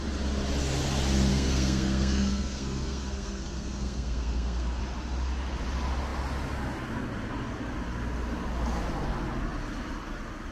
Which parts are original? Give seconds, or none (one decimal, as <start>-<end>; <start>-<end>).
0.0-1.3; 4.8-10.5